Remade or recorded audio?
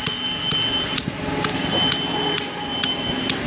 recorded